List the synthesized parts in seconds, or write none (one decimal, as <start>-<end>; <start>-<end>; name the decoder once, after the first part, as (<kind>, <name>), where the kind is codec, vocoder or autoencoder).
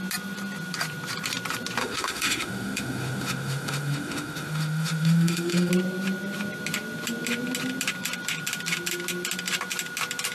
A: 1.8-5.7 (autoencoder, DAC-VAE)